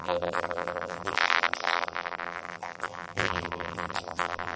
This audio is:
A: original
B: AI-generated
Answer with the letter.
B